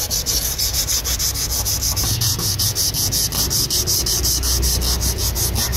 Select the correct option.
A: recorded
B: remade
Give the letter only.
A